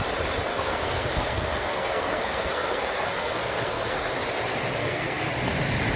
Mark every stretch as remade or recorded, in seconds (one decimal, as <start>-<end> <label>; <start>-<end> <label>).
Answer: 0.0-0.5 recorded; 0.5-4.1 remade; 4.1-4.8 recorded; 4.8-5.3 remade; 5.3-6.0 recorded